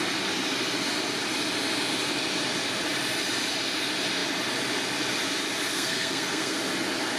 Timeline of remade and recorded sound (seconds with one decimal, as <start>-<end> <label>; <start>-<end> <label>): 0.0-5.7 recorded; 5.7-6.6 remade; 6.6-7.2 recorded